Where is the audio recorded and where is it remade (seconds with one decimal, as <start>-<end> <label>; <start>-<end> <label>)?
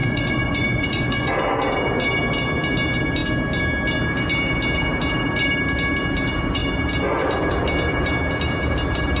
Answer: 0.0-1.3 remade; 1.3-9.2 recorded